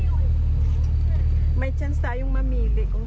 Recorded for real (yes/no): yes